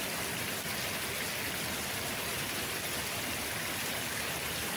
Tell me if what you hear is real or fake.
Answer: real